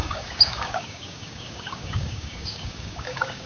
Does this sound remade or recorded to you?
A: remade